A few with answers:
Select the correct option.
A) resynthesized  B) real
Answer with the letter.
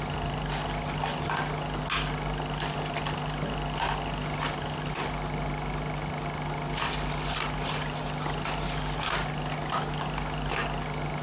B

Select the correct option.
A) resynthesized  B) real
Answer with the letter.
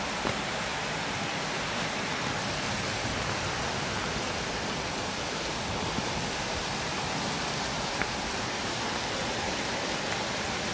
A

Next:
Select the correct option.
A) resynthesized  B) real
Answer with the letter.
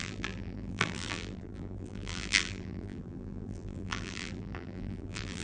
A